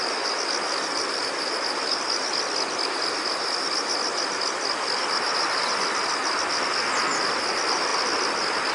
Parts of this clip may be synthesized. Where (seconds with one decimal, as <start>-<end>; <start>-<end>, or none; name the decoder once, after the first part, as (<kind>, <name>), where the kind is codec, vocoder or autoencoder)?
none